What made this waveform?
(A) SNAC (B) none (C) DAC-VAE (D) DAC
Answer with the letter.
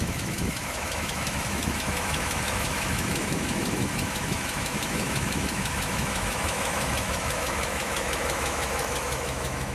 C